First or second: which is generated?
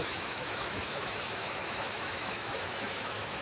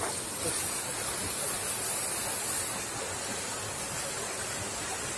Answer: first